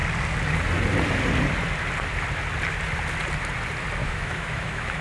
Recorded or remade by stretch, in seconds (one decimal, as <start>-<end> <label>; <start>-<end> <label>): 0.0-4.0 recorded; 4.0-5.0 remade